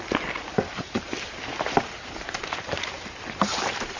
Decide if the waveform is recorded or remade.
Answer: recorded